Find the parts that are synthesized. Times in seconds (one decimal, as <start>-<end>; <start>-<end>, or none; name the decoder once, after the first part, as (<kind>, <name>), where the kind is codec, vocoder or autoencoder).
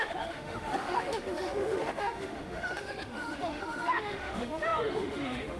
0.0-5.6 (autoencoder, DAC-VAE)